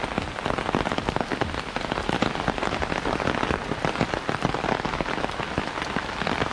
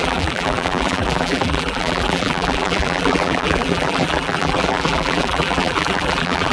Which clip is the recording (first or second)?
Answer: first